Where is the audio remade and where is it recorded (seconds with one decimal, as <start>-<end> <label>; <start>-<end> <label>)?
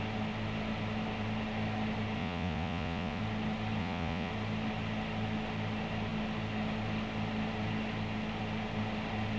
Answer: 0.0-2.2 recorded; 2.2-3.2 remade; 3.2-3.8 recorded; 3.8-4.3 remade; 4.3-9.4 recorded